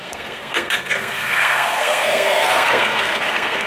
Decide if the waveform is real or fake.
fake